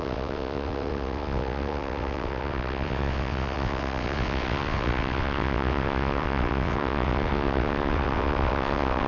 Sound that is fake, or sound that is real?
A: fake